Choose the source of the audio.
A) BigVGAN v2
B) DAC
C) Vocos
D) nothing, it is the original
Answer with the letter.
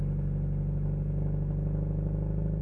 D